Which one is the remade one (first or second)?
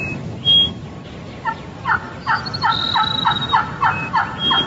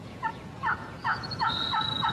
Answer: second